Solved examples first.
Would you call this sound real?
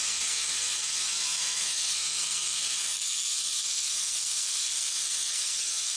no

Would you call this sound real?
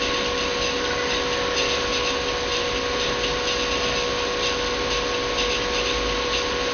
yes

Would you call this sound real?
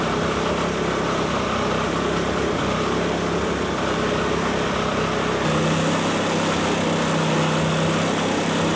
yes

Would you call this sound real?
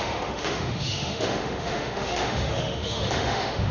no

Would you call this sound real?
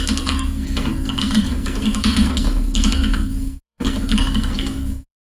no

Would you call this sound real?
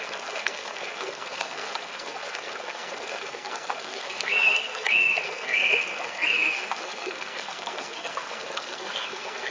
no